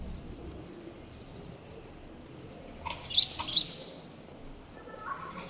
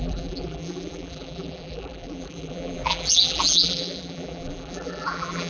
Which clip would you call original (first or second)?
first